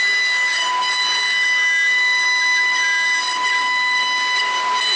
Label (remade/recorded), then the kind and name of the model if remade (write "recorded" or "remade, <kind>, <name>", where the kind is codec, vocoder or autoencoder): recorded